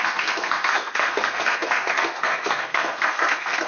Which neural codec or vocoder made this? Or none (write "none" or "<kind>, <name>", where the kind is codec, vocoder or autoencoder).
codec, SNAC